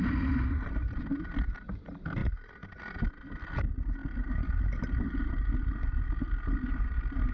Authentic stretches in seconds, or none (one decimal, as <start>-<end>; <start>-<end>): 0.0-7.3